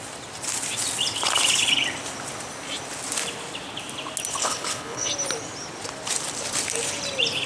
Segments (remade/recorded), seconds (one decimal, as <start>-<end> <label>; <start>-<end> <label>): 0.0-4.4 recorded; 4.4-5.1 remade; 5.1-7.5 recorded